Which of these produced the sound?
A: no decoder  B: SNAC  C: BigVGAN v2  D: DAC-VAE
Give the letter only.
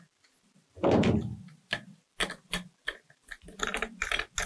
A